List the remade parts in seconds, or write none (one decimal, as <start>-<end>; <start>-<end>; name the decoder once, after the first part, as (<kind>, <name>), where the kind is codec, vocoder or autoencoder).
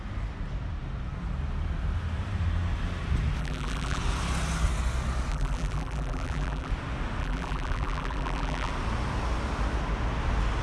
3.4-4.0 (vocoder, BigVGAN v2); 5.3-6.7; 7.2-8.7